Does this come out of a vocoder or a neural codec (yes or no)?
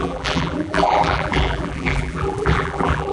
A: yes